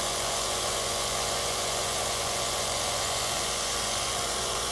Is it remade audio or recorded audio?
remade